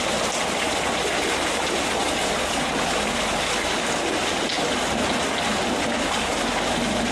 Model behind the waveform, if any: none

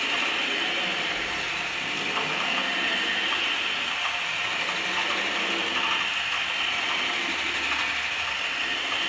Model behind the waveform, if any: none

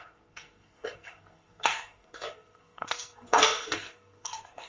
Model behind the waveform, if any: codec, SNAC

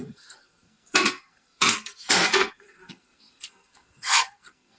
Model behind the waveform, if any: codec, SNAC